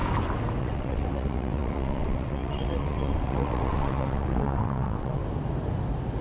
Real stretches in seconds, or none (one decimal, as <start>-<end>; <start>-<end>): 0.0-0.6; 5.2-6.2